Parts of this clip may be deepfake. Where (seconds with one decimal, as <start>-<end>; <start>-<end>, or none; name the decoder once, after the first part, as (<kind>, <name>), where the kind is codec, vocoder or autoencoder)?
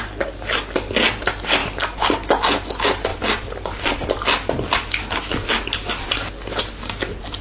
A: none